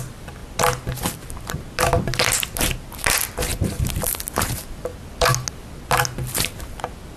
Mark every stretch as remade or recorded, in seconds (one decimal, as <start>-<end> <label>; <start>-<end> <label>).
0.0-7.2 recorded